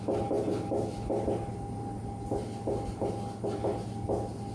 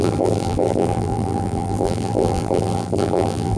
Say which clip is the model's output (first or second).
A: second